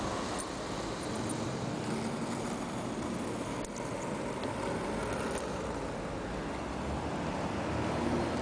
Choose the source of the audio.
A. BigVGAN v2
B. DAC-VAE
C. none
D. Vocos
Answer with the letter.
C